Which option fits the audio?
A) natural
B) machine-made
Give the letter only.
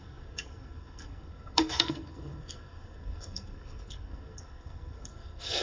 B